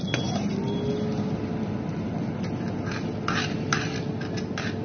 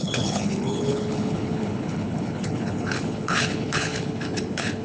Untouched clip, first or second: first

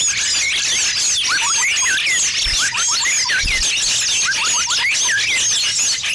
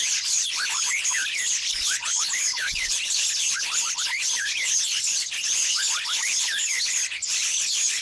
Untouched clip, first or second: first